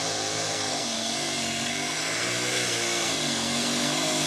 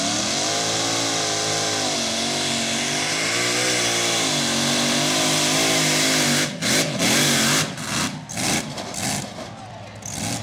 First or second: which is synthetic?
first